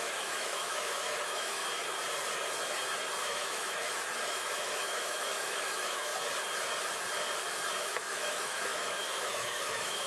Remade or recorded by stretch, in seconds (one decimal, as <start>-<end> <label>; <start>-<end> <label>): 0.0-1.6 remade; 1.6-3.2 recorded; 3.2-6.1 remade; 6.1-7.8 recorded; 7.8-10.1 remade